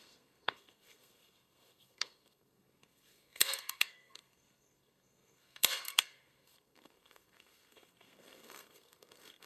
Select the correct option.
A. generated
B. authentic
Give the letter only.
A